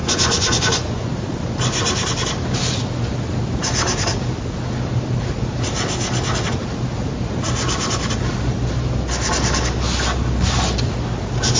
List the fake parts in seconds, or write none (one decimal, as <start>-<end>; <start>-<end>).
0.0-1.1